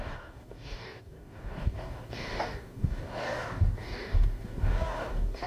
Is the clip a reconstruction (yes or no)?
yes